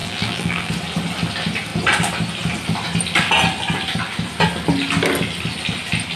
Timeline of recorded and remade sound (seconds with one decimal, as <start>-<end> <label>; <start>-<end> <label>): 0.0-0.7 remade; 0.7-6.2 recorded